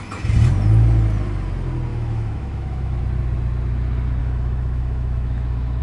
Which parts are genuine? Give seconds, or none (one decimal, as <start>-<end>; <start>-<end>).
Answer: 0.0-1.9; 3.0-4.2

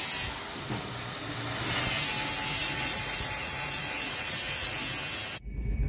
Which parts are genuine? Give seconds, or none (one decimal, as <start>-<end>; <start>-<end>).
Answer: 0.0-2.6; 4.8-5.9

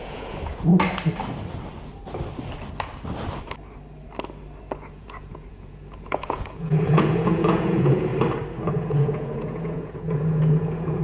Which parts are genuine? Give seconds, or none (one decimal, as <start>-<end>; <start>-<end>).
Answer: 0.7-4.9; 8.1-8.7

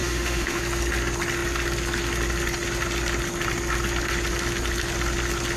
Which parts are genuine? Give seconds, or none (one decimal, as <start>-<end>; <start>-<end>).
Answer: 0.6-5.6

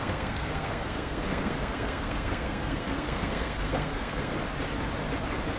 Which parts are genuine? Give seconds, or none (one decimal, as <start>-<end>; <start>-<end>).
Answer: 4.3-5.6

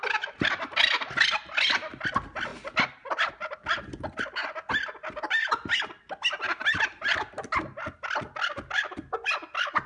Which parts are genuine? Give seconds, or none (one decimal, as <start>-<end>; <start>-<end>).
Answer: 0.0-9.9